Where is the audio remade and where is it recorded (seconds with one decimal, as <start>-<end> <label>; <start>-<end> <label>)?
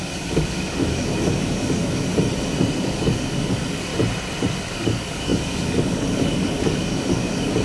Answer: 0.0-2.1 remade; 2.1-2.8 recorded; 2.8-3.9 remade; 3.9-4.6 recorded; 4.6-7.6 remade